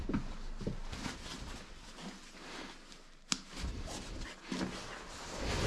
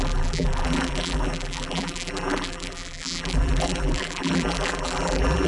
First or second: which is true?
first